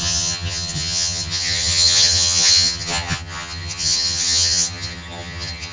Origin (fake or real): fake